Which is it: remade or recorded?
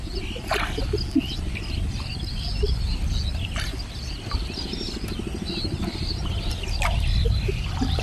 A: recorded